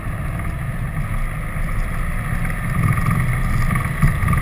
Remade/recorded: recorded